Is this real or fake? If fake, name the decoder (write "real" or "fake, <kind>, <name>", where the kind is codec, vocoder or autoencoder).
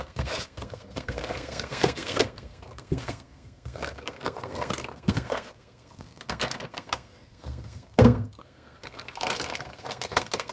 fake, codec, SNAC